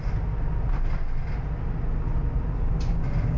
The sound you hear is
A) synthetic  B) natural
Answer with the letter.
B